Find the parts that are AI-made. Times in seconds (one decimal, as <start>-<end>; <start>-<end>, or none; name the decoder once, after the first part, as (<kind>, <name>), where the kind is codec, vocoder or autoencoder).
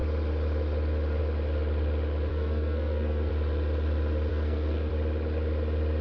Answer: 2.3-3.3 (codec, SNAC); 4.3-4.9